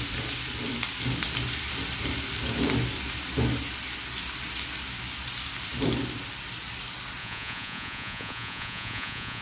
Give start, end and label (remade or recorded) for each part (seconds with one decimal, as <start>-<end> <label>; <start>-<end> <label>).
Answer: 0.0-7.2 recorded; 7.2-9.4 remade